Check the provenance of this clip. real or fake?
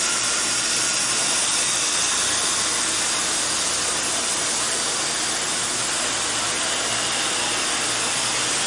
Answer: real